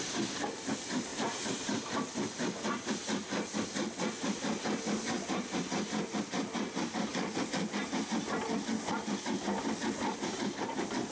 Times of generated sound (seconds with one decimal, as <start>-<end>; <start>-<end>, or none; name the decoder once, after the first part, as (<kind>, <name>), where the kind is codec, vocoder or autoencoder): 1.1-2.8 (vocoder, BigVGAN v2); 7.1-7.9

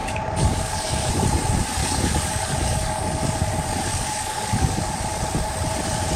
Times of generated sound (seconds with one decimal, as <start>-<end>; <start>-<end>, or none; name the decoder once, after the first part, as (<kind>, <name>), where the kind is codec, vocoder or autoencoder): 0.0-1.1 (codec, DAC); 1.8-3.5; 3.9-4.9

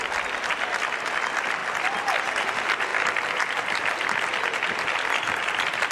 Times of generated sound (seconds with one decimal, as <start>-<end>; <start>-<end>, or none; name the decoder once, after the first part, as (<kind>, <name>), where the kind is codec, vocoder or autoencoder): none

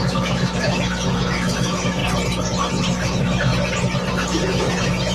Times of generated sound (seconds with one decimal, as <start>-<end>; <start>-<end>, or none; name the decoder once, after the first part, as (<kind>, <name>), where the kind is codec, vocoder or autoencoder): 0.0-2.0 (autoencoder, DAC-VAE); 2.7-3.5; 4.1-5.1

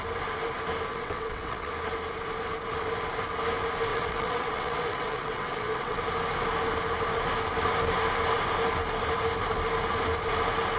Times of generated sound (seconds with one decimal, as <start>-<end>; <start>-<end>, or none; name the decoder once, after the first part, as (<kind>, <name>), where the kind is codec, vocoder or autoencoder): 0.9-1.7 (vocoder, WaveNeXt); 3.9-6.0

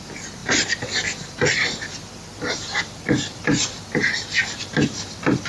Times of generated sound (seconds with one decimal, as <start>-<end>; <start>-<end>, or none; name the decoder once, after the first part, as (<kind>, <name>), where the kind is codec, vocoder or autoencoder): 0.0-0.4 (vocoder, BigVGAN v2); 2.5-5.5

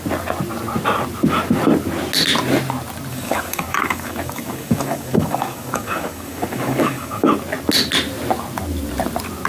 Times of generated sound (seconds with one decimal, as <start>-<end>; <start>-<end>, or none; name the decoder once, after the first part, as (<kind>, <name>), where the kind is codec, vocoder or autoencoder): 3.1-7.3 (codec, DAC)